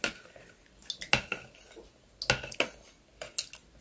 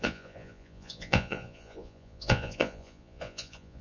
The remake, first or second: second